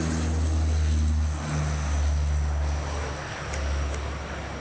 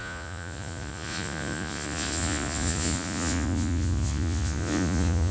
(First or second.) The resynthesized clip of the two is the second